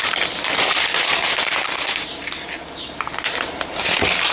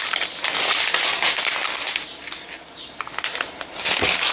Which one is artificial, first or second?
first